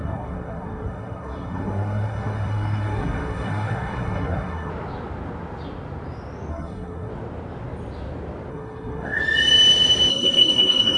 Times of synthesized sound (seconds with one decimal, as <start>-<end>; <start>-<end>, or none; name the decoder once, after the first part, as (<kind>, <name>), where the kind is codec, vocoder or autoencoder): 0.0-4.7 (codec, SNAC); 6.5-7.1; 8.5-9.2; 10.1-11.0